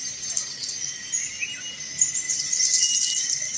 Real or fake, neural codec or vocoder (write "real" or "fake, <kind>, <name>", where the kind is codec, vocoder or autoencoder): real